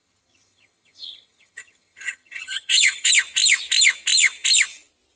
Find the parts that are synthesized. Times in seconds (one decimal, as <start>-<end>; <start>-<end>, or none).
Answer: 0.0-3.1